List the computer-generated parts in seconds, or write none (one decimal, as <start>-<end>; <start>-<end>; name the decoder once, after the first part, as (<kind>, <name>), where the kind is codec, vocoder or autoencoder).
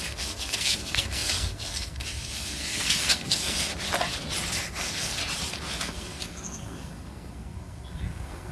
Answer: 0.0-3.7 (codec, SNAC); 4.6-5.2; 5.8-8.5